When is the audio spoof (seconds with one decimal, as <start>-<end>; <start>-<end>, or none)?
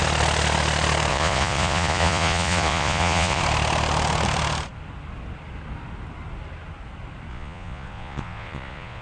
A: 1.1-3.4; 7.3-9.0